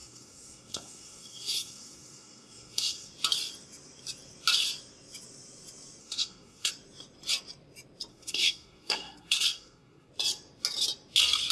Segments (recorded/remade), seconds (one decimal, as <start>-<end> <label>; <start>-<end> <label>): 0.0-3.1 remade; 3.1-6.0 recorded; 6.0-6.7 remade; 6.7-8.1 recorded; 8.1-10.1 remade; 10.1-11.5 recorded